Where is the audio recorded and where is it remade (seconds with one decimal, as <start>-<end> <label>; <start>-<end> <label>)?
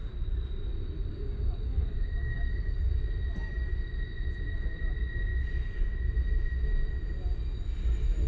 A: 0.0-1.1 recorded; 1.1-2.9 remade; 2.9-8.3 recorded